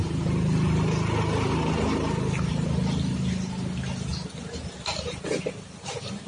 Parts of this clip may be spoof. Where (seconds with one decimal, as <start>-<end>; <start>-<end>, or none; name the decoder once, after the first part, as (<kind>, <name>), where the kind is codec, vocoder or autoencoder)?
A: none